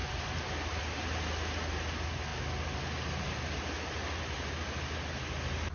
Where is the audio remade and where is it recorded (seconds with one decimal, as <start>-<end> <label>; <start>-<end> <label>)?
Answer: 0.0-5.7 recorded